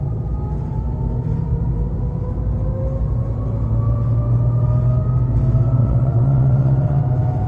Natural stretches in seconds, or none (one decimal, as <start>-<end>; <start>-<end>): 0.0-5.8; 7.0-7.5